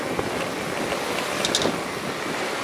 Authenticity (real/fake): real